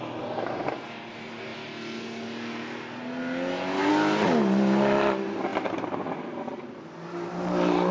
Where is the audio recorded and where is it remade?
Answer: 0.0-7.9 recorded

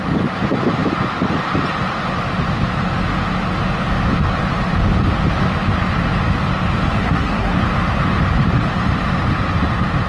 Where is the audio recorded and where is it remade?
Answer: 0.0-7.0 recorded; 7.0-7.6 remade; 7.6-10.1 recorded

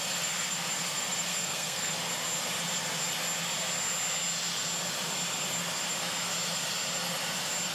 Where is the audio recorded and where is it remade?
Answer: 0.0-1.3 recorded; 1.3-1.9 remade; 1.9-7.7 recorded